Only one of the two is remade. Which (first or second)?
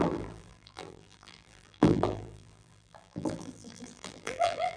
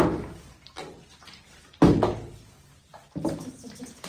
first